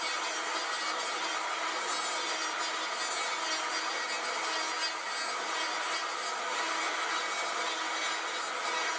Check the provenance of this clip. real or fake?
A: real